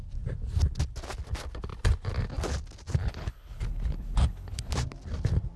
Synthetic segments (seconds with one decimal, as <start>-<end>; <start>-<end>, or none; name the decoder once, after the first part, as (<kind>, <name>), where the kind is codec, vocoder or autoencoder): 3.0-4.7 (codec, HILCodec)

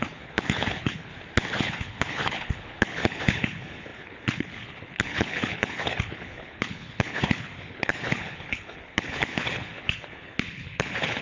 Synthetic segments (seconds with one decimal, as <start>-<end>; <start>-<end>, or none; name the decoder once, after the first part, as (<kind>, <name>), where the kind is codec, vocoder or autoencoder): 0.0-1.1 (codec, HILCodec); 1.6-11.2